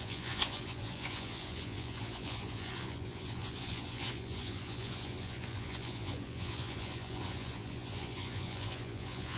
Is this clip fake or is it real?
fake